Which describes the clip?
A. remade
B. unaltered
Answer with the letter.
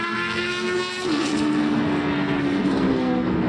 A